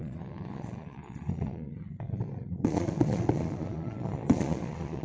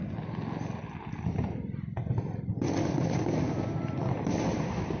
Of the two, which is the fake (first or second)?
first